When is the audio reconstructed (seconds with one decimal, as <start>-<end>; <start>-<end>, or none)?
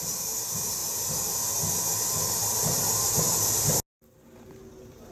none